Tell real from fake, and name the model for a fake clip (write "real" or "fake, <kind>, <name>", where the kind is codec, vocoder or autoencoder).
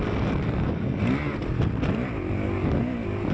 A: real